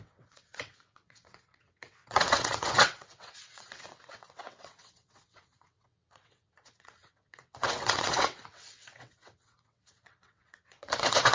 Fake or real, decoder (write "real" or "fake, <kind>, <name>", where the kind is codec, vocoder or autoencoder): fake, vocoder, WaveNeXt